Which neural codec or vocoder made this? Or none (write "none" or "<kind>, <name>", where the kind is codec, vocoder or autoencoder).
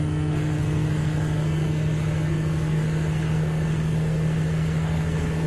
codec, SNAC